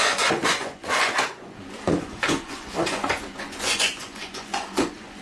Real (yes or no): no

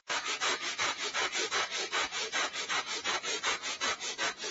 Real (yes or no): no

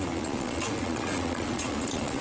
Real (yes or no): no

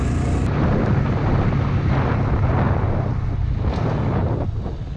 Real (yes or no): yes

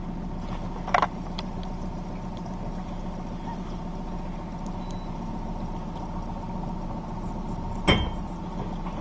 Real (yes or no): yes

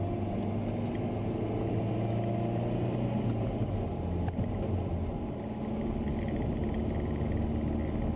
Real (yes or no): yes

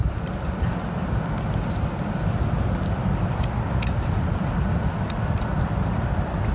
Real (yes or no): yes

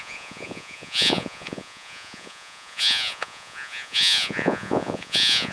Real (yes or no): no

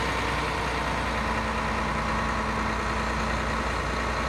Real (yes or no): yes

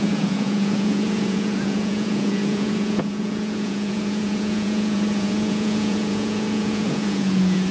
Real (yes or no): no